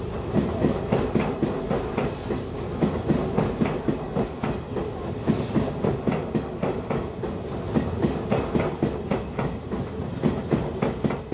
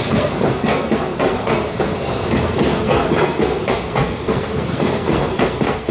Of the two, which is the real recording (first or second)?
first